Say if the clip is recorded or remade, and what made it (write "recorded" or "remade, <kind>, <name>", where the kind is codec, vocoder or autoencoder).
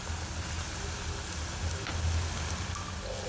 recorded